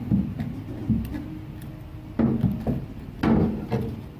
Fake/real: real